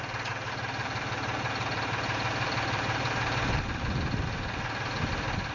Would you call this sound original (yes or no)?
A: no